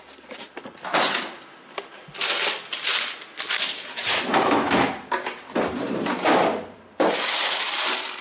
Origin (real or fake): fake